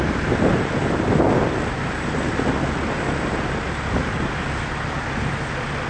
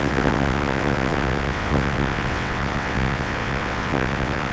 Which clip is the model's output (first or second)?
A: second